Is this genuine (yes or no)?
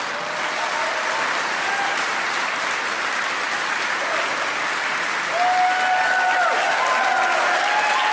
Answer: yes